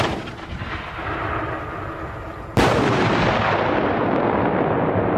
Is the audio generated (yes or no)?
no